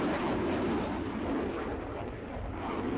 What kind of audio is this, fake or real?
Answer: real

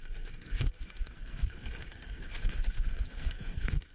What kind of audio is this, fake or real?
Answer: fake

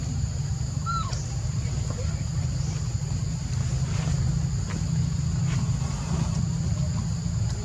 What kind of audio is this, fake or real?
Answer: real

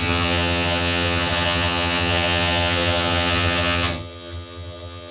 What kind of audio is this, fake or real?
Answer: fake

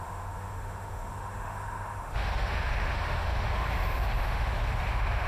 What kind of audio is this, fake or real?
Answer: fake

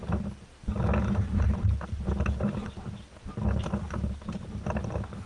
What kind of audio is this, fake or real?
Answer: real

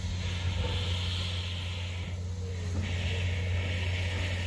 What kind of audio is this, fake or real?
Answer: real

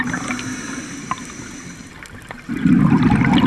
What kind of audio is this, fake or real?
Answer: real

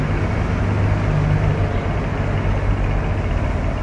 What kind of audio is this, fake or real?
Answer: real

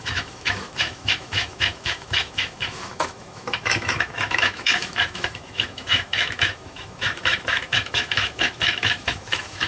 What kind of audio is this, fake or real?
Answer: fake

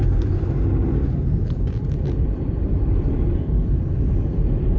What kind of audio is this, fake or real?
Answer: fake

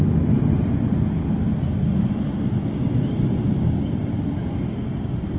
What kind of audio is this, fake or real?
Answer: real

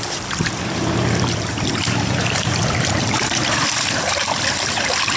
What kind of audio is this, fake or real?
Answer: fake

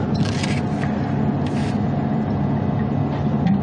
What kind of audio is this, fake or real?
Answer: real